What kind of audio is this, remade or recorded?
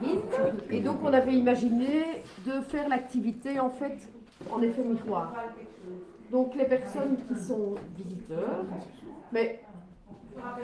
recorded